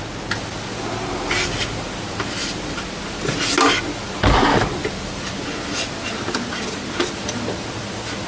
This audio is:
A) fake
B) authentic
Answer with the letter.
B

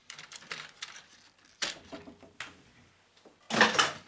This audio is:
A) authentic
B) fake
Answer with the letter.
A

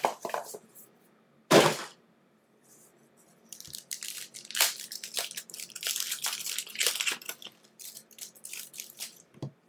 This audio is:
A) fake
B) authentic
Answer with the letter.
A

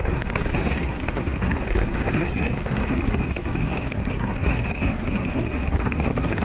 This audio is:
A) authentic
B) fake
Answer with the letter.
B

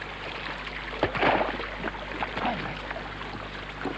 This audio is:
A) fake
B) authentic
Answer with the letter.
B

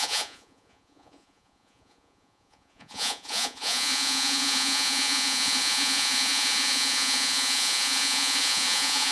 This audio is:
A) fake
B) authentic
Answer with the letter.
A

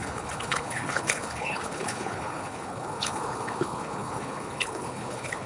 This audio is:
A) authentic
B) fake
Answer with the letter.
B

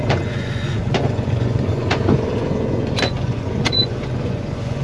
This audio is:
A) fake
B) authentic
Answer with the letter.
A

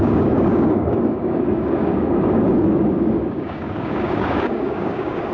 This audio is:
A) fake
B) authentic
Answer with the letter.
A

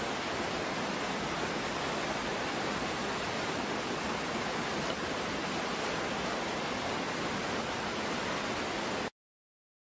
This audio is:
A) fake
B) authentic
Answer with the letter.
B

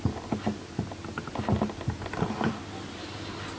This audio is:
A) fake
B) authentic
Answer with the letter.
B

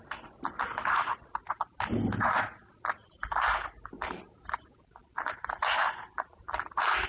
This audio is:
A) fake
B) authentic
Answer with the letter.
B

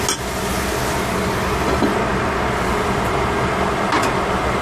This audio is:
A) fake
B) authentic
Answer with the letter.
B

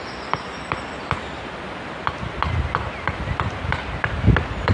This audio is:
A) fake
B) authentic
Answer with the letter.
B